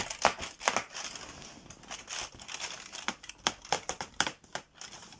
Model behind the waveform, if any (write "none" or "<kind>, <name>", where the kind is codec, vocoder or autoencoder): none